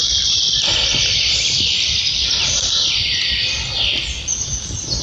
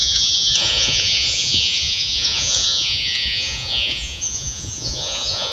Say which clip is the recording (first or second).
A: first